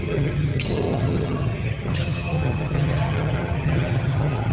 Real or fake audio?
fake